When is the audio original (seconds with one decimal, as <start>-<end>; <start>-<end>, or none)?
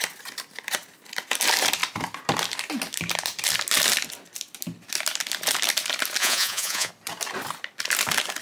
0.0-6.2; 6.9-8.4